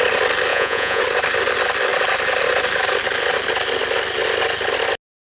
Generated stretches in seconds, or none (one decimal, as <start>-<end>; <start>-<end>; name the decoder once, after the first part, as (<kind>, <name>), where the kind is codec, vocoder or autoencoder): 0.5-1.0 (vocoder, Vocos)